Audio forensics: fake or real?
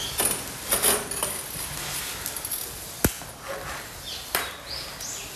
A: real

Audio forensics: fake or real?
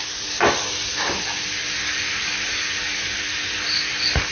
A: real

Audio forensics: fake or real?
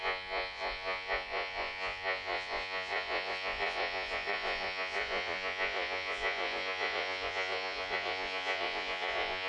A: fake